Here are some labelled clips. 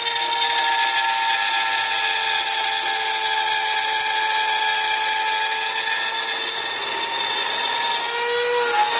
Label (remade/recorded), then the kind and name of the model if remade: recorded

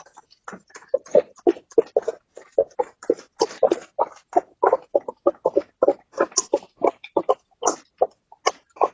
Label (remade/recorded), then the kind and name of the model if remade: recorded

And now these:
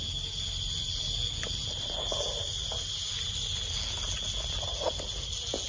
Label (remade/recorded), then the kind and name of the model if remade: recorded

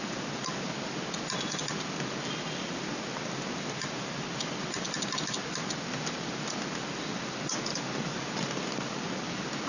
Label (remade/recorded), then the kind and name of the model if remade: recorded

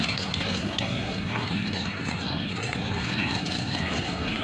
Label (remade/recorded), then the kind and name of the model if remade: remade, codec, SNAC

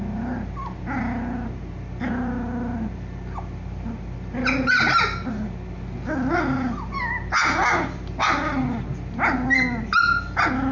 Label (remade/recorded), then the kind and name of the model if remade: recorded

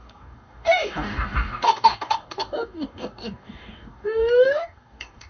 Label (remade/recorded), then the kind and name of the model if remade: remade, codec, DAC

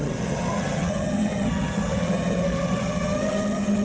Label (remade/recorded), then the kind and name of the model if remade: remade, vocoder, HiFi-GAN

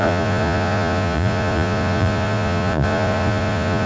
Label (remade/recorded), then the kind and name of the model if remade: remade, vocoder, Vocos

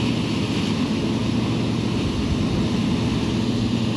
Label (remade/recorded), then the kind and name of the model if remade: recorded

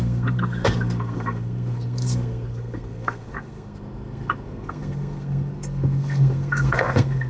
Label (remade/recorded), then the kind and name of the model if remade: remade, codec, SNAC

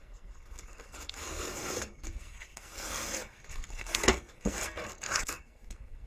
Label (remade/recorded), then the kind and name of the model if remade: remade, codec, SNAC